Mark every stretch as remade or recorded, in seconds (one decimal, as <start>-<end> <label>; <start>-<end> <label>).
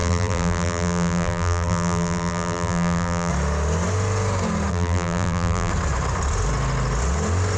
0.0-3.3 remade; 3.3-4.7 recorded; 4.7-5.7 remade; 5.7-7.6 recorded